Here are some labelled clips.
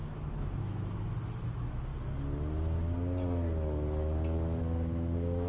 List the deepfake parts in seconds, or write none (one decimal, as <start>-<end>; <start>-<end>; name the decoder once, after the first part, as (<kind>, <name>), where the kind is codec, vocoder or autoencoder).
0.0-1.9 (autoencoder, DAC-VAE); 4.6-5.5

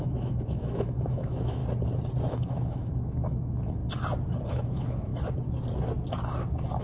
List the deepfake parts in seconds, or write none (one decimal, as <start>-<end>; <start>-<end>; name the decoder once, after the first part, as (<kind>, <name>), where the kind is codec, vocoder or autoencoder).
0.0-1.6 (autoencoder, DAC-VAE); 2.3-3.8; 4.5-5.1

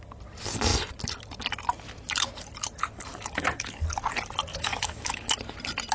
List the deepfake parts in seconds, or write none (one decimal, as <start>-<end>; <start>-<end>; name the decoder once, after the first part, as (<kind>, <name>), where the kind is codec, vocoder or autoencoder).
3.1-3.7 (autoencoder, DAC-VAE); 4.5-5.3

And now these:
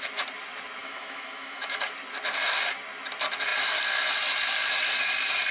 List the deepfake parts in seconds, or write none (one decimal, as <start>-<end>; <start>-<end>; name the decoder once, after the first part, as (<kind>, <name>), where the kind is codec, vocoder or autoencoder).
0.8-1.8 (autoencoder, DAC-VAE)